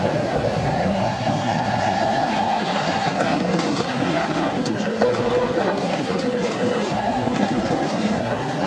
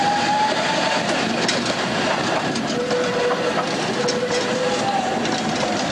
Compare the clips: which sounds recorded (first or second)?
second